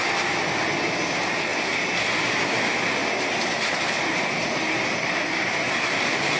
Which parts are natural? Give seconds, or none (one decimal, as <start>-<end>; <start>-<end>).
0.0-3.0